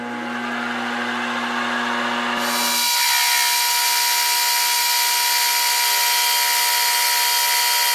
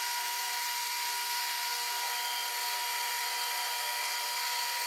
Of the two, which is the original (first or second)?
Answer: first